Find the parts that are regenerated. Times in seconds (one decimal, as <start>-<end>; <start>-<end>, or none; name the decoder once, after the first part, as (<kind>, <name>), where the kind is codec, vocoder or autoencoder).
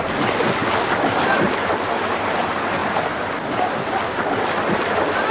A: none